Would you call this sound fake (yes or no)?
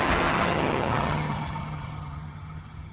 yes